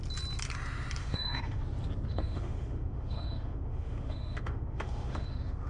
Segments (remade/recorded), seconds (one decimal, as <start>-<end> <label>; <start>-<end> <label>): 0.0-1.0 recorded; 1.0-1.6 remade; 1.6-2.1 recorded; 2.1-5.7 remade

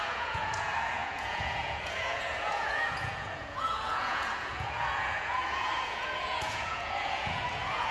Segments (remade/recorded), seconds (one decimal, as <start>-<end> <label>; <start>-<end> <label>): 0.0-7.9 remade

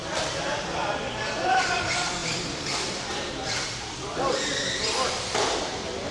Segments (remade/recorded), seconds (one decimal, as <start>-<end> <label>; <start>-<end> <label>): 0.0-1.8 remade; 1.8-2.2 recorded; 2.2-4.4 remade; 4.4-6.1 recorded

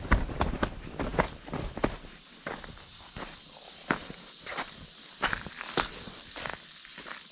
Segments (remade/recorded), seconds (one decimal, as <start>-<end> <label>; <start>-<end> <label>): 0.0-7.3 recorded

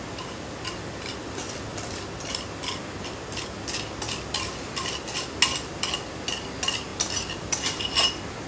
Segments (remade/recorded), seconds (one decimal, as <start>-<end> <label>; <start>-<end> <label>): 0.0-8.5 recorded

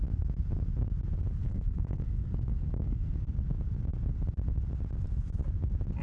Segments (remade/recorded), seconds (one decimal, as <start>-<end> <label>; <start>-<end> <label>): 0.0-1.4 recorded; 1.4-3.2 remade; 3.2-6.0 recorded